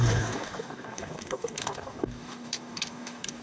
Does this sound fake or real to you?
fake